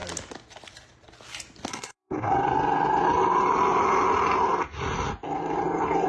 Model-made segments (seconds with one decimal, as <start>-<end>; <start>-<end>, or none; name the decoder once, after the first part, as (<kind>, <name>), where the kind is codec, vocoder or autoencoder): 1.7-2.3 (codec, SNAC)